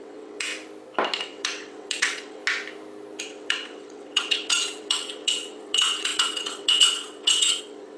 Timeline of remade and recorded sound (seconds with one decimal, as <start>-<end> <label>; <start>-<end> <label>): 0.0-0.5 remade; 0.5-1.2 recorded; 1.2-2.4 remade; 2.4-3.2 recorded; 3.2-8.0 remade